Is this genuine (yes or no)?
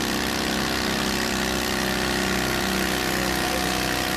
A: yes